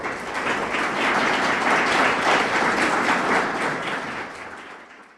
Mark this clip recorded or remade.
recorded